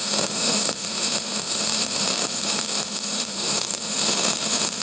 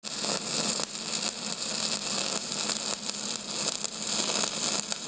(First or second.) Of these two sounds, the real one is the second